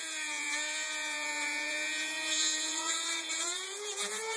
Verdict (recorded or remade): remade